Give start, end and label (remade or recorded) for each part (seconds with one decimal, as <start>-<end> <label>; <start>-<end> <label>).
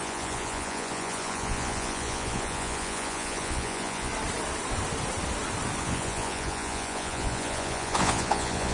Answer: 0.0-4.1 remade; 4.1-5.8 recorded; 5.8-8.7 remade